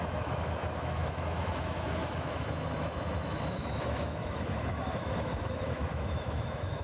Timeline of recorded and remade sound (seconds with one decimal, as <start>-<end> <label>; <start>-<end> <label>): 0.0-6.8 remade